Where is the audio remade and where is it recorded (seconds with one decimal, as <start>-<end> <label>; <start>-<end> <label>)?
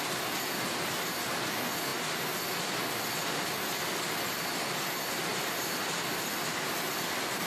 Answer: 0.0-5.3 recorded; 5.3-5.9 remade; 5.9-7.5 recorded